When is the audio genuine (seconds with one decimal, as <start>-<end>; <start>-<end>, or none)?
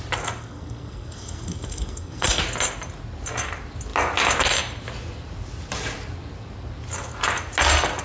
0.0-0.4; 2.4-8.0